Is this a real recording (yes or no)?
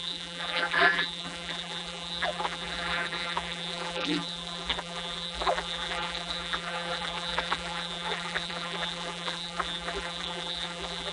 no